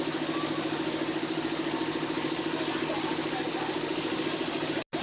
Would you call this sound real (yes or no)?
yes